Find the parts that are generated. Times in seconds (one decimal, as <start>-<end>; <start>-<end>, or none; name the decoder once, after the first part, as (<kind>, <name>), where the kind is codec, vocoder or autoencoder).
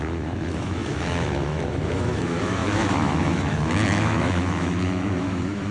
0.0-5.7 (autoencoder, DAC-VAE)